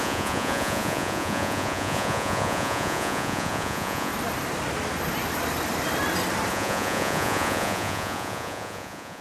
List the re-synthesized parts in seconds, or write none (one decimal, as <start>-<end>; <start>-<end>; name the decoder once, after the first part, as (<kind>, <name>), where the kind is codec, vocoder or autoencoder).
0.0-4.1 (vocoder, Vocos); 6.5-9.2